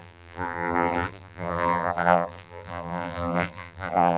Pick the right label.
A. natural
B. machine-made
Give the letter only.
B